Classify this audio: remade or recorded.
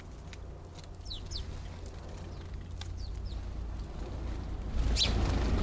recorded